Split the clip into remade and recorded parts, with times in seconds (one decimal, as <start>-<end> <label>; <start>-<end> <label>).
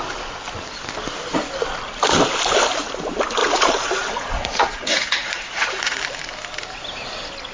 0.0-3.4 recorded; 3.4-6.0 remade; 6.0-7.5 recorded